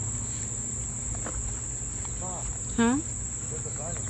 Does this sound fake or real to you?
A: real